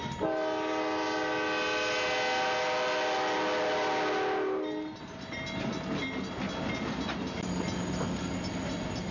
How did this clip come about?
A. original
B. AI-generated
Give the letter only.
A